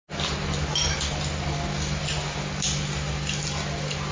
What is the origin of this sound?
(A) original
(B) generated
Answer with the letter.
A